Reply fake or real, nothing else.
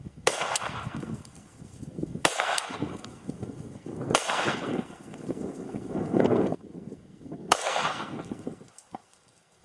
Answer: fake